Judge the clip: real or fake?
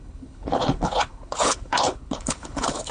fake